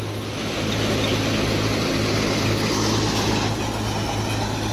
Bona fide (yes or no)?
yes